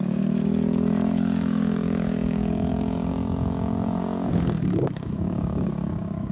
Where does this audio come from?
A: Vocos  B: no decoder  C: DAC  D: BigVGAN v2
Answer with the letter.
C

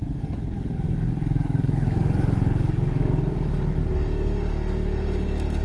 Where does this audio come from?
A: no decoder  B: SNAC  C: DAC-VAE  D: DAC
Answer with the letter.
D